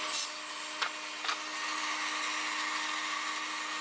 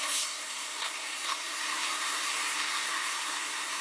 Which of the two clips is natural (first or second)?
first